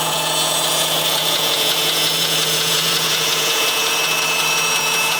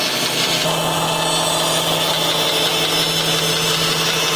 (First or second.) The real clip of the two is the second